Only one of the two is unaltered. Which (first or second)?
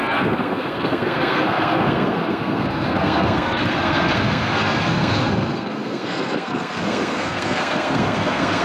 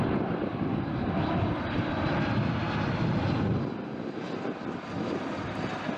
second